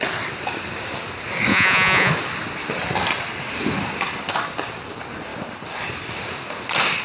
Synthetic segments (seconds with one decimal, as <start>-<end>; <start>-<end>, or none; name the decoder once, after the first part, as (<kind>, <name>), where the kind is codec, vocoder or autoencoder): 1.5-2.1 (vocoder, Vocos)